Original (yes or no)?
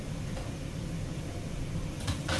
no